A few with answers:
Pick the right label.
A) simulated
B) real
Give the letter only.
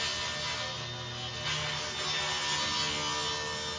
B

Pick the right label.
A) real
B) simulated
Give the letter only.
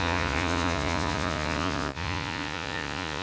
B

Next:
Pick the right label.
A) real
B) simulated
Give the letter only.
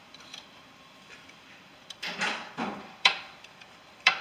B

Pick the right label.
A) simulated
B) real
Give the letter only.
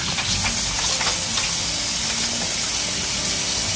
B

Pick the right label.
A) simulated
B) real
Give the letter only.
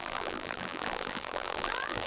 A